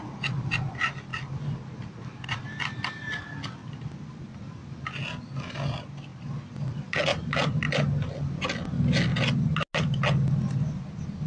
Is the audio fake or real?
real